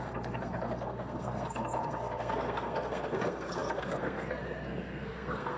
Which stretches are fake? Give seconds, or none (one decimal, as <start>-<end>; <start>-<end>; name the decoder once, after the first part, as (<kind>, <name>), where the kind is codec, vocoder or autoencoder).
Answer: 0.0-5.6 (codec, SNAC)